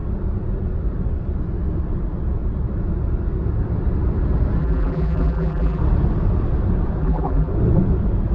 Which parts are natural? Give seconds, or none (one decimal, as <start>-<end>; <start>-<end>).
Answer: 0.0-4.6; 5.8-7.0; 7.5-8.3